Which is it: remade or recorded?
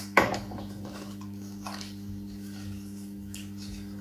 remade